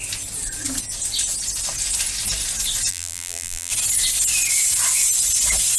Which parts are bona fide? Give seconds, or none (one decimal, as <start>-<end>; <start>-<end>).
0.0-2.9; 3.7-5.8